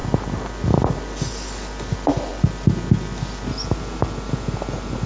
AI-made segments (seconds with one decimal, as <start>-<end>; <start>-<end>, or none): none